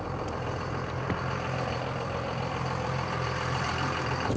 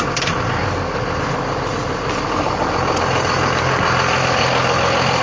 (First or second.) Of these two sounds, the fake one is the first